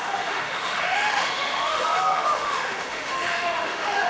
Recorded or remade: remade